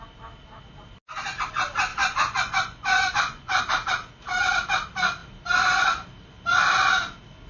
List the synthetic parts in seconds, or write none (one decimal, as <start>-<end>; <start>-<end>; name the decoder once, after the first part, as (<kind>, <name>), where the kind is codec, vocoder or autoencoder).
1.9-3.6 (vocoder, Vocos)